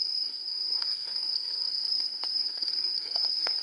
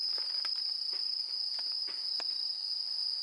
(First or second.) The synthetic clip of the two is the first